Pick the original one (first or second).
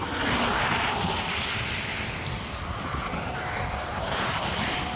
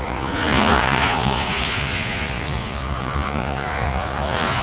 first